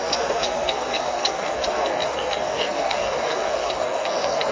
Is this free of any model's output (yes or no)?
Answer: no